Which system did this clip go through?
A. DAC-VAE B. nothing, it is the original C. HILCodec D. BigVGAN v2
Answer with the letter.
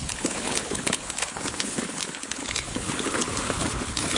C